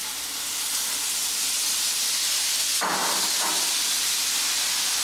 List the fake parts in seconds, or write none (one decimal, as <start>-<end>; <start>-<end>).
none